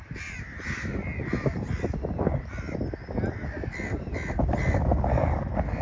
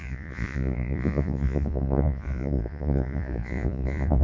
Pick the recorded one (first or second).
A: first